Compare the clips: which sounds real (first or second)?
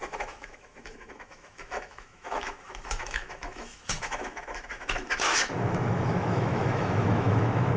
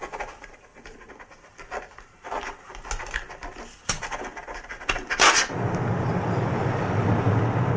second